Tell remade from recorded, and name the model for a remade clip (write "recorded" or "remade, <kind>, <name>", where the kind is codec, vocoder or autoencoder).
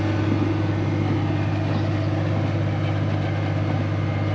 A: recorded